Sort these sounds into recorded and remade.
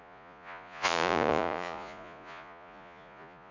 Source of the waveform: remade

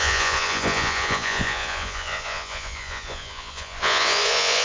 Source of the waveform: remade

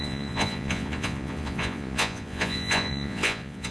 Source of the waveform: remade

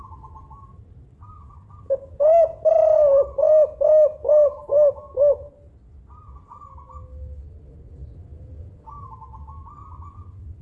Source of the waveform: recorded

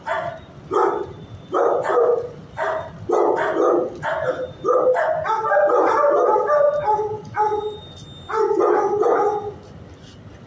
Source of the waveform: recorded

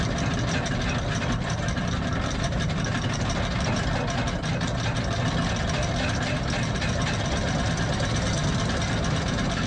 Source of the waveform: recorded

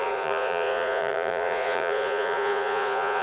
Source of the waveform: remade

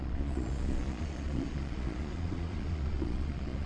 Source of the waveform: remade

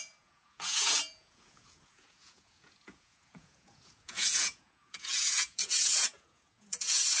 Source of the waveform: remade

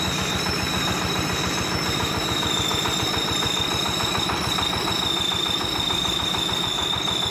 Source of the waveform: recorded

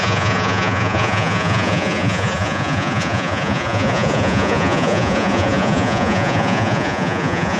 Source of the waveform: remade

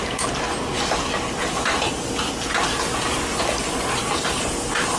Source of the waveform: recorded